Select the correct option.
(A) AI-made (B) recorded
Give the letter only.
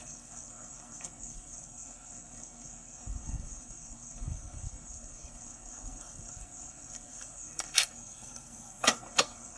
A